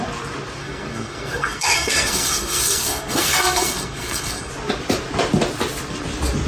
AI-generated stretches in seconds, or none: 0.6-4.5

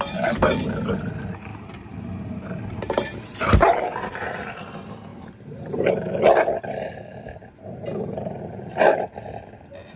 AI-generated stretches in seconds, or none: 1.5-4.4; 5.1-5.9; 7.4-8.8